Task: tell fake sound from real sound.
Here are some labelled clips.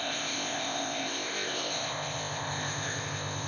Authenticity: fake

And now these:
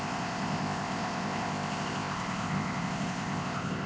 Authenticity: fake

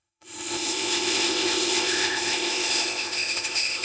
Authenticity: fake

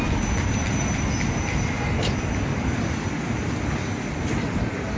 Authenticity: real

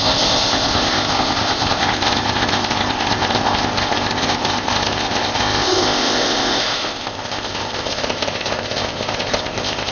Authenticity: fake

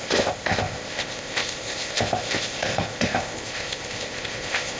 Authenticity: fake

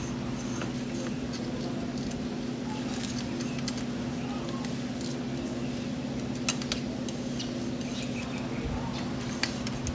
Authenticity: real